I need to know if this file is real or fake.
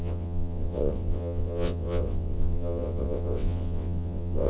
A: fake